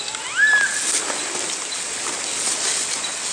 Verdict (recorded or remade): recorded